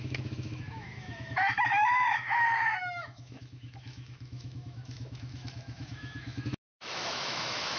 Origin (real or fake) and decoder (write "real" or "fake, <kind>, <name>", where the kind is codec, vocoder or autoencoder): fake, autoencoder, DAC-VAE